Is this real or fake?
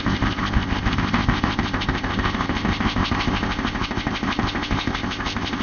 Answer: fake